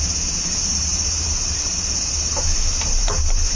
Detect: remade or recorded remade